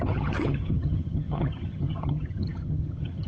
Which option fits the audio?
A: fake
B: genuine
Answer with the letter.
A